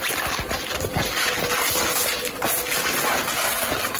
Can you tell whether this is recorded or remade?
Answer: recorded